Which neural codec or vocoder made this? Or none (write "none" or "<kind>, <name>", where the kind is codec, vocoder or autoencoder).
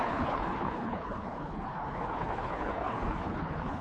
codec, HILCodec